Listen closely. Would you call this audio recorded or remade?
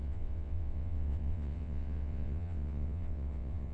remade